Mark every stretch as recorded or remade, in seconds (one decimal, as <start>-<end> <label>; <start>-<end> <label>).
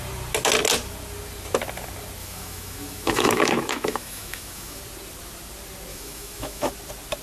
0.0-2.2 recorded; 2.2-4.8 remade; 4.8-5.9 recorded; 5.9-6.7 remade; 6.7-7.2 recorded